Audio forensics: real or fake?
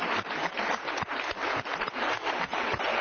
fake